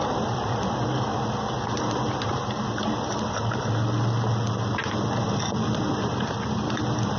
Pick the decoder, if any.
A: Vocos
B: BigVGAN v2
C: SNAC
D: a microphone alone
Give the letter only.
D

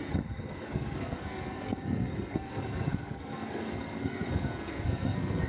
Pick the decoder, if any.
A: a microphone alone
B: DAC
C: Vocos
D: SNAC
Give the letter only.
D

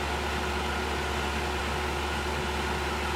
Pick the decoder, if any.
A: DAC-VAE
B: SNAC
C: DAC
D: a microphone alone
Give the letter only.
D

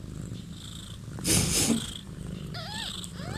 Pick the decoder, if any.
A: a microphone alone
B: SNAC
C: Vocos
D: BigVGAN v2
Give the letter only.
A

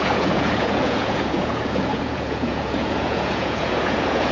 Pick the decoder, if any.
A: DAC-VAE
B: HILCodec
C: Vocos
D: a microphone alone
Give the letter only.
C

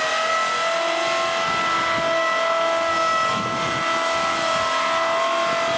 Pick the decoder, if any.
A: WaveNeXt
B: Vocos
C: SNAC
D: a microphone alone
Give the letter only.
D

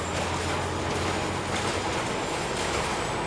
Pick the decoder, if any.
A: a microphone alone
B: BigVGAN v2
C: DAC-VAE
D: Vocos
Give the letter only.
A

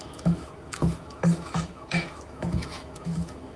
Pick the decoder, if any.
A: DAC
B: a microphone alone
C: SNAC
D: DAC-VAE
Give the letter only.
D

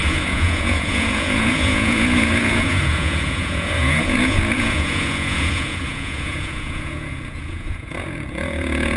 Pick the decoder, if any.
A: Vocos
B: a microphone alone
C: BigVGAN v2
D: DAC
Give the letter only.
A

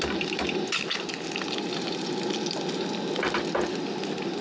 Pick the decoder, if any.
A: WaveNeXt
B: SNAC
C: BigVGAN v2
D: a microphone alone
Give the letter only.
D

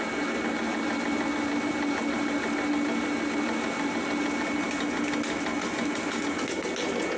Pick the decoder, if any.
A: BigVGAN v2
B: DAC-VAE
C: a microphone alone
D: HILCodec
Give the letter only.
C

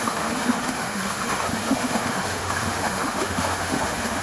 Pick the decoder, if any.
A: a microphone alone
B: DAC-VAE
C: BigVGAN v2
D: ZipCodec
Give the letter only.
B